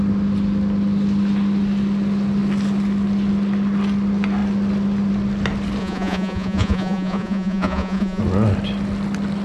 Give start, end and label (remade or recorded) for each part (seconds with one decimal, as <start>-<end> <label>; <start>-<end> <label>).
0.0-5.8 recorded; 5.8-8.2 remade; 8.2-9.4 recorded